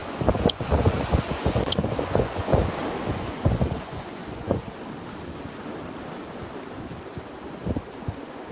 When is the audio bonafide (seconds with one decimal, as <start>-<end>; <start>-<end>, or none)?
2.5-3.1; 4.6-7.8